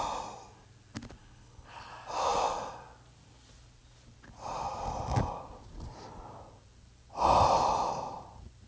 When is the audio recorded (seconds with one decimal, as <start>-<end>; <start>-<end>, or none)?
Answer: 0.0-1.2; 1.9-8.7